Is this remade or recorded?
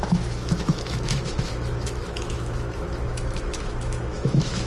remade